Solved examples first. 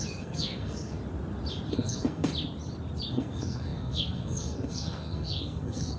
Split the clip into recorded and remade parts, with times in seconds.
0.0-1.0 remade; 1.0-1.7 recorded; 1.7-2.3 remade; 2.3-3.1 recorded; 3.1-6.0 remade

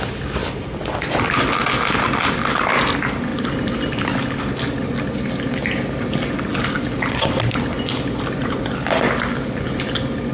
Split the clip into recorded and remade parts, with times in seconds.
0.0-10.3 recorded

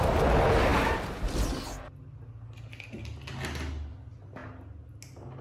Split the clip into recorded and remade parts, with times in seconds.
0.0-5.4 recorded